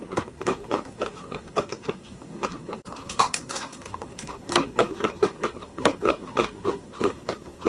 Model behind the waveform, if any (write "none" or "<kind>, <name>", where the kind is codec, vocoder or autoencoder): codec, SNAC